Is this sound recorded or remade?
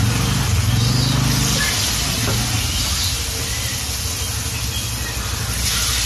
recorded